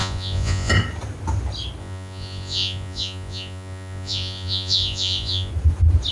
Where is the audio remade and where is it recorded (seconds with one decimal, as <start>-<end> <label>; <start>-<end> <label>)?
0.0-0.7 remade; 0.7-1.8 recorded; 1.8-5.5 remade; 5.5-6.1 recorded